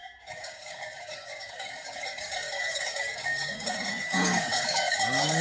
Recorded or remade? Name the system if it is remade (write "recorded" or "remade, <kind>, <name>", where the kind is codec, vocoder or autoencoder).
remade, codec, DAC